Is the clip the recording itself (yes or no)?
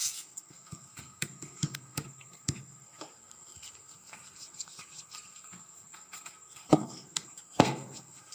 no